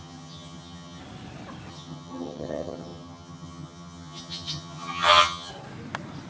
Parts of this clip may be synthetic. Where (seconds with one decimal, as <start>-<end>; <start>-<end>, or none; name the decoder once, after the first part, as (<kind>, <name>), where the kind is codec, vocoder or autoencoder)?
0.0-1.0 (vocoder, HiFi-GAN); 1.7-5.5